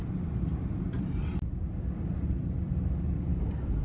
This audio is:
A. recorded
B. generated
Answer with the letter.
A